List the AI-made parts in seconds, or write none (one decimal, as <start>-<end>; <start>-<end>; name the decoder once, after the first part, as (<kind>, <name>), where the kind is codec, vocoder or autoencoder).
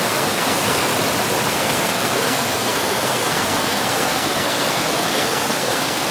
0.0-0.9 (codec, SNAC); 1.5-6.1